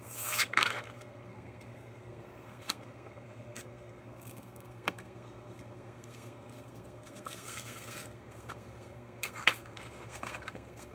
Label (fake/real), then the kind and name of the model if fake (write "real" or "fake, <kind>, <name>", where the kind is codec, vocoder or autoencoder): fake, codec, SNAC